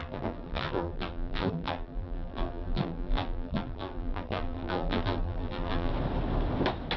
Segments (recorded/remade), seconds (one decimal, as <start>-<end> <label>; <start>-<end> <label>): 0.0-5.9 remade; 5.9-7.0 recorded